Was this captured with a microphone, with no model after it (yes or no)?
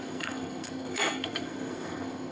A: no